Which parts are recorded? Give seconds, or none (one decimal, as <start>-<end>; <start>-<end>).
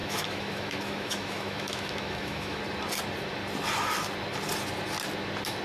2.6-5.6